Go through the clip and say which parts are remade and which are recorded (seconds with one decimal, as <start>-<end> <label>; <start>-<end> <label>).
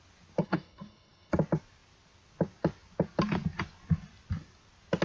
0.0-0.4 recorded; 0.4-1.3 remade; 1.3-5.0 recorded